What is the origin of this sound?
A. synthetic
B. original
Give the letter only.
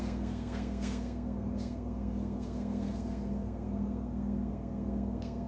A